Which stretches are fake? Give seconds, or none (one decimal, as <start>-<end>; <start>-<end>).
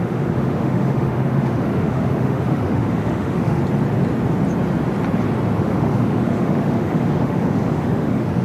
0.0-3.6; 5.6-8.4